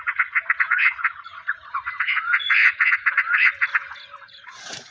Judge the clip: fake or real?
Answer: fake